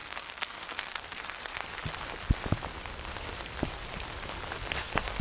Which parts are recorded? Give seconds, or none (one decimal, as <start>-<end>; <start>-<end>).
1.7-4.8